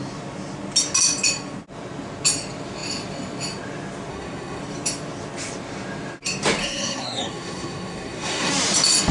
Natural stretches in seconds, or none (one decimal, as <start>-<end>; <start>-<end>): 0.0-4.1; 4.6-6.6; 8.5-9.1

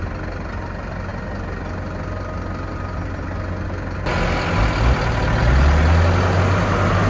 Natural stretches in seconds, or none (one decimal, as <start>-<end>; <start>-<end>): 0.0-7.1

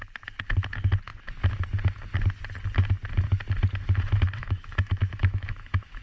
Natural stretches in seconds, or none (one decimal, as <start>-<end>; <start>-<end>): 0.0-4.4

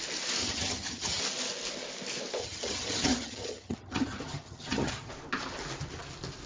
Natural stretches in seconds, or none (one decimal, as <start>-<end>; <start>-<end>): 0.0-0.4; 1.2-2.4; 5.1-6.5